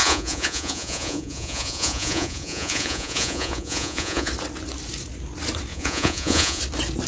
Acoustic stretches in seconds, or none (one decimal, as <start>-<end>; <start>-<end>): 4.3-5.7; 6.6-7.1